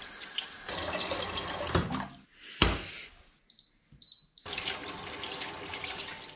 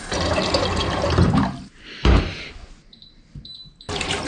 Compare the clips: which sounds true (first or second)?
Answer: first